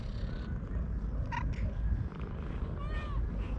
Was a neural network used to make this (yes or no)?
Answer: no